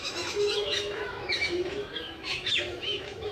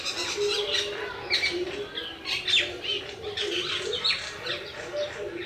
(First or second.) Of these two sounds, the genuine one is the second